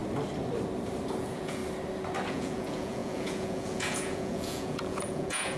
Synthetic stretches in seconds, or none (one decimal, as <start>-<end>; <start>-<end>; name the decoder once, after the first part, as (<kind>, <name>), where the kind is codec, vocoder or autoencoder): 1.2-1.6 (vocoder, Vocos); 2.3-5.6